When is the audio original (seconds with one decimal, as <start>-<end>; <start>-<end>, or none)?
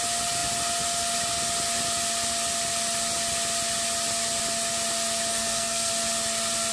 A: 0.0-5.3; 5.9-6.7